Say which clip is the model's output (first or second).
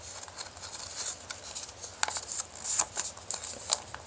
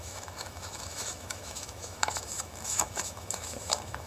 second